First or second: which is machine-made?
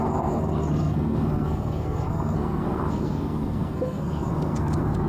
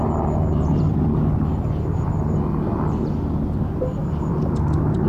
first